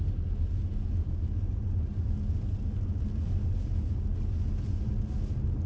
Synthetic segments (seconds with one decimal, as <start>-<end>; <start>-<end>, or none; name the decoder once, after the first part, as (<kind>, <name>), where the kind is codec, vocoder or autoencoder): 0.7-1.3 (vocoder, Vocos)